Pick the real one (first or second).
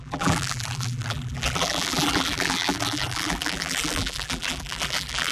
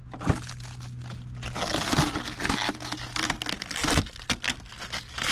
second